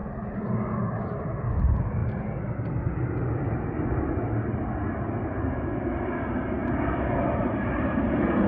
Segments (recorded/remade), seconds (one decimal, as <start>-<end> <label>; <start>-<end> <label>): 0.0-6.6 recorded; 6.6-8.5 remade